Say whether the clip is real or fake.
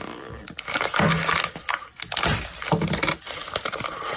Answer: real